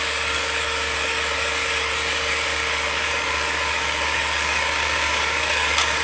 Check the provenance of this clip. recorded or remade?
remade